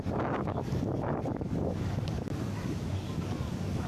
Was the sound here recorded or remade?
remade